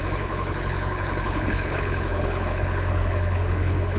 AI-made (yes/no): yes